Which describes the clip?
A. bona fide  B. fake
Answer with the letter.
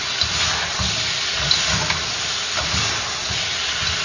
A